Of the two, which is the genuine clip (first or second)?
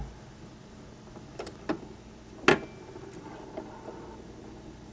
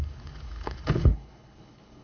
first